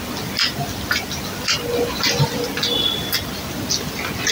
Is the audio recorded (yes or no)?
yes